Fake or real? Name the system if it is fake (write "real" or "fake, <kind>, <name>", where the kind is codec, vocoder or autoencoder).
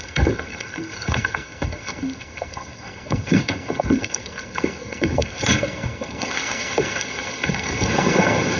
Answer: fake, codec, SNAC